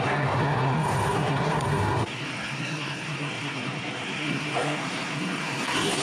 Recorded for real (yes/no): no